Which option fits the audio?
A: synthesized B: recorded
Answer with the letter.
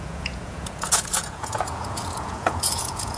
A